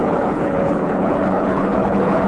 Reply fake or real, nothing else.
fake